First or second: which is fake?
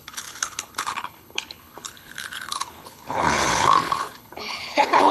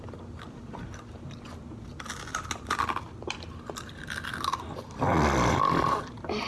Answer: first